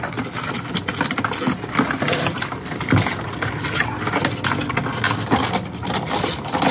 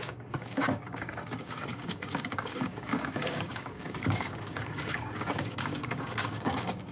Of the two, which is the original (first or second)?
first